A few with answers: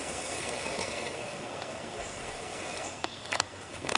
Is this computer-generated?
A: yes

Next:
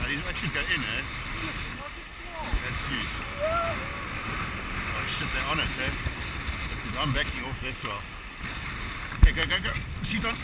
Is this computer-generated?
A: no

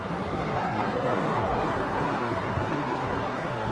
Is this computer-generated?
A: yes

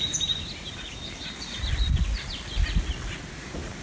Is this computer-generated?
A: no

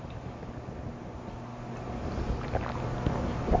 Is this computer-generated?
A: no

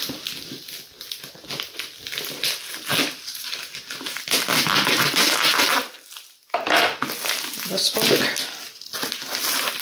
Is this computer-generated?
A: no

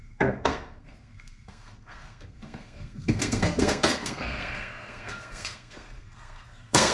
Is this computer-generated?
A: yes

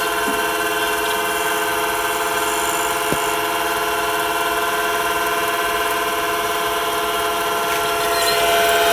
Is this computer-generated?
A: no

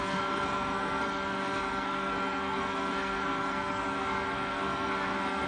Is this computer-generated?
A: yes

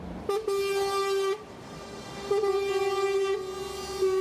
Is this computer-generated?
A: no